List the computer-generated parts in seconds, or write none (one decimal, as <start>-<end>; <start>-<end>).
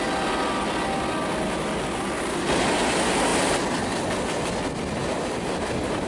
none